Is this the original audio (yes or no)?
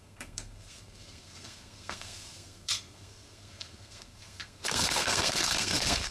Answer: no